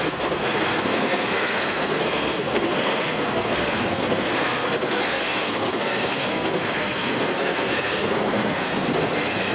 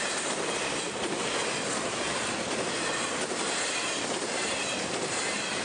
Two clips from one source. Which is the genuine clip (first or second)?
second